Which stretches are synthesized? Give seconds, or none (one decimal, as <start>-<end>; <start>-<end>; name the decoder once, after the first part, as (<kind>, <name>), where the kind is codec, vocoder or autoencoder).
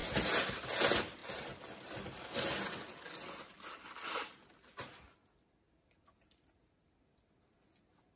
none